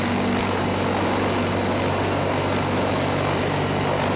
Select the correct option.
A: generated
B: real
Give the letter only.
B